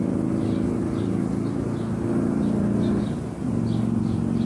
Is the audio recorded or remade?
recorded